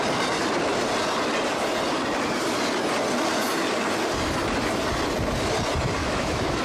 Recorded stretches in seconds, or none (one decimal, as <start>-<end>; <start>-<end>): 0.0-6.0